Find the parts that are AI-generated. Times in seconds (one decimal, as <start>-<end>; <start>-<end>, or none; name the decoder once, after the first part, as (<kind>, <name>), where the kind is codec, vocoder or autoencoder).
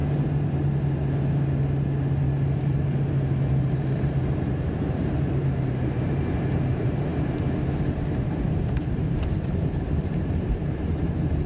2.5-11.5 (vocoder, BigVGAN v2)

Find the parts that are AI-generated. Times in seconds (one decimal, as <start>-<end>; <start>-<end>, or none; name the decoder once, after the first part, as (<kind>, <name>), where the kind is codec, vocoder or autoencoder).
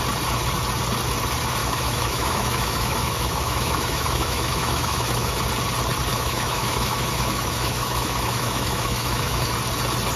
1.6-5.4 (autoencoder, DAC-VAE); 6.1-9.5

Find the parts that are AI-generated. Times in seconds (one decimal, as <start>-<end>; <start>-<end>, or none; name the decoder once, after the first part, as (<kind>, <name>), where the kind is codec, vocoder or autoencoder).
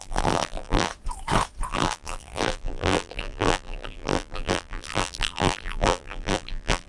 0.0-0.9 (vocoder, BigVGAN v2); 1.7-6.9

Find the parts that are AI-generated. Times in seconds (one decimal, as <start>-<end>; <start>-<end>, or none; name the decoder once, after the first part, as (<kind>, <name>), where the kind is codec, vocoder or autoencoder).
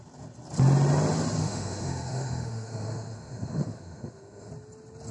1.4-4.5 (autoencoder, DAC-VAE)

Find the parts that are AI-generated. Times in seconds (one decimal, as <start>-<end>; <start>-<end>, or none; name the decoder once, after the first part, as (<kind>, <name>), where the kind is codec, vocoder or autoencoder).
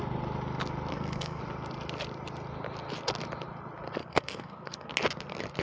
0.9-1.4 (codec, SNAC); 4.0-4.9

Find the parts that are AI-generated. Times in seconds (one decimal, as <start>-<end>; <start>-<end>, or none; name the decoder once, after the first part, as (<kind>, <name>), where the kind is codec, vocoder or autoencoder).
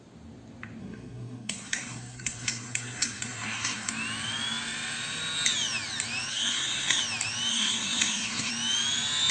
0.8-3.9 (codec, SNAC); 6.3-7.0; 7.5-8.5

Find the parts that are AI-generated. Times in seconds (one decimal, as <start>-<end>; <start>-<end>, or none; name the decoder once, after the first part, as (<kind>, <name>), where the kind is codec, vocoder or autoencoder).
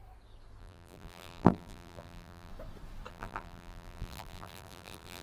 0.6-2.5 (vocoder, BigVGAN v2); 3.1-5.2